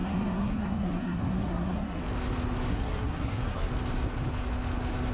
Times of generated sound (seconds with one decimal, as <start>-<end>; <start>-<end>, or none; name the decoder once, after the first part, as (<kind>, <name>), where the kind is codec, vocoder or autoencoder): 0.0-2.0 (codec, SNAC); 2.7-3.7